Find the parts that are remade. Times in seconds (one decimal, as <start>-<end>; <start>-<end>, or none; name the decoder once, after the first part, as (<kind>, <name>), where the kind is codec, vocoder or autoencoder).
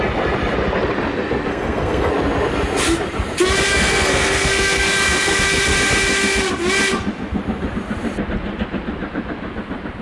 1.5-2.1 (codec, SNAC); 3.7-5.4